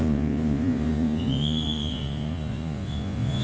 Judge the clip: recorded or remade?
remade